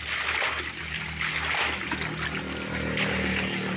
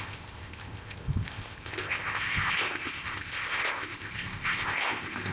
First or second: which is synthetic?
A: second